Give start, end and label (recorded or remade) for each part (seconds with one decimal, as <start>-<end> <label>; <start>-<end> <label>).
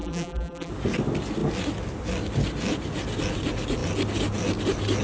0.0-0.7 remade; 0.7-5.0 recorded